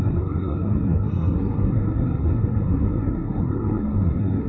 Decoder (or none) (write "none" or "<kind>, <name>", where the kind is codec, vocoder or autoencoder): codec, SNAC